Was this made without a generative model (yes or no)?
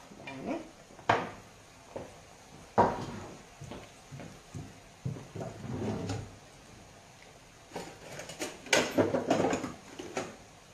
yes